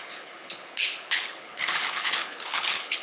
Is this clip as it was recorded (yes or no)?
no